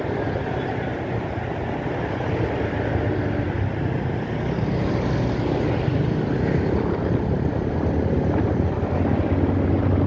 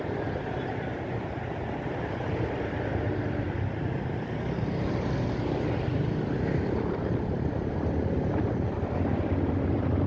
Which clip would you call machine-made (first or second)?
second